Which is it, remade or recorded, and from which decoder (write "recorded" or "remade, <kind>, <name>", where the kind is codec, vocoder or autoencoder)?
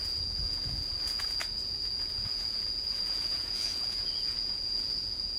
remade, vocoder, Vocos